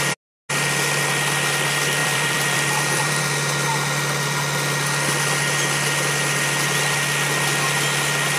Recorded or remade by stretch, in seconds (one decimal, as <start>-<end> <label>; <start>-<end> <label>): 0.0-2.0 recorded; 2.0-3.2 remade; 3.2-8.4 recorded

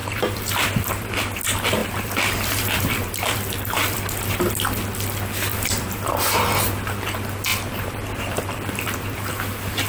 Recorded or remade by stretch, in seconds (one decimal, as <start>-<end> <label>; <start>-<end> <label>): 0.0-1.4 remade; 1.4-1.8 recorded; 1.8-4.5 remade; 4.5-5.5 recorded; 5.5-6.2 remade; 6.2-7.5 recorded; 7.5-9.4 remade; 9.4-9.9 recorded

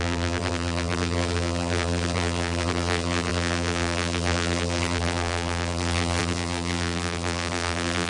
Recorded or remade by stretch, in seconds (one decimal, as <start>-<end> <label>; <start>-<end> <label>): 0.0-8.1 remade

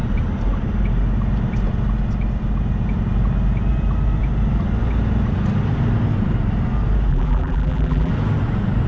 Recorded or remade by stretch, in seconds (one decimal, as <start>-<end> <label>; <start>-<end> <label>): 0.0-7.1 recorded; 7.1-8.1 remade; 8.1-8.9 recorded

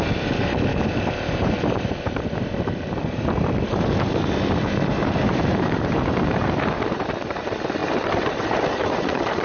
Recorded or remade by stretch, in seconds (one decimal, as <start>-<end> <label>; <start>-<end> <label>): 0.0-9.4 remade

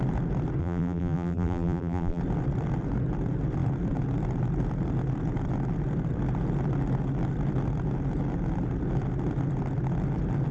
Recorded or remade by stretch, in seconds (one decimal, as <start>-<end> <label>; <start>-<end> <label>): 0.0-0.6 recorded; 0.6-2.2 remade; 2.2-10.5 recorded